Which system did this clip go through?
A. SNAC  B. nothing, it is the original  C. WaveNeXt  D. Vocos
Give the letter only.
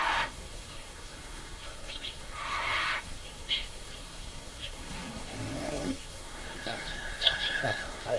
A